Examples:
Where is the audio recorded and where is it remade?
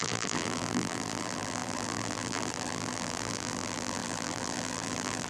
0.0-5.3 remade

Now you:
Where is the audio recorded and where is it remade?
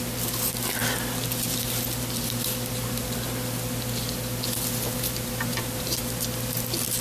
0.0-5.5 recorded; 5.5-6.0 remade; 6.0-7.0 recorded